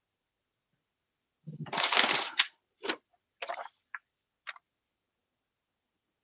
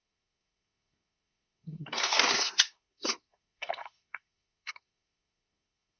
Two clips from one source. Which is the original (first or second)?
first